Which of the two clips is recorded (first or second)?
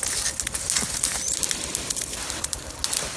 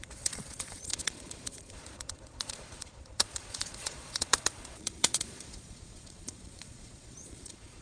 first